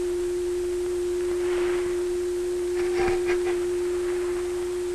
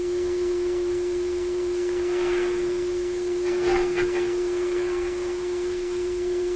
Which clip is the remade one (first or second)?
second